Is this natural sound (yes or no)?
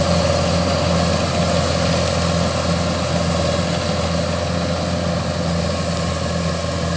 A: yes